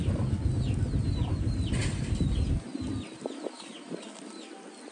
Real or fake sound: real